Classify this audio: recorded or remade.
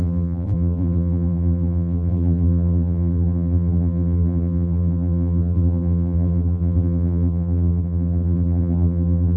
remade